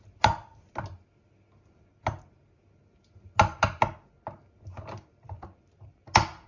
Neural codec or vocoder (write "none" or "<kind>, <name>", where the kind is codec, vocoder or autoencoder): none